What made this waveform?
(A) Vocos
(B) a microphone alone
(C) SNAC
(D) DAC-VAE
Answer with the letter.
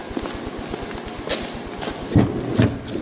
B